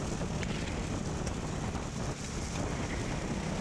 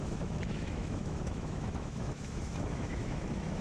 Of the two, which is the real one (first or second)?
first